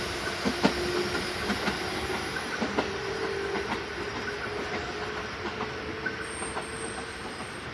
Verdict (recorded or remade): recorded